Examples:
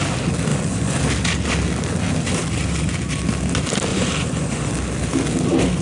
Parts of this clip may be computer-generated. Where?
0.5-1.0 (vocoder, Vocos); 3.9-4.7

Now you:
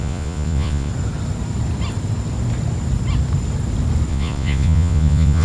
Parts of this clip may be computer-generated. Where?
0.0-0.9 (vocoder, Vocos); 4.1-5.4

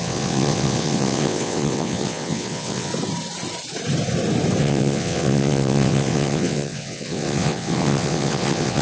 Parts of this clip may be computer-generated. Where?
0.0-2.9 (vocoder, WaveNeXt); 4.6-8.8

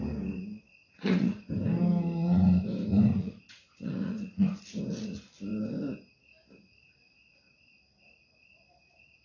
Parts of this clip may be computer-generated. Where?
0.8-1.5 (vocoder, Vocos); 3.1-4.6

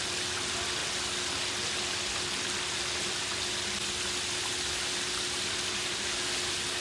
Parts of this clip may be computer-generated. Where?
none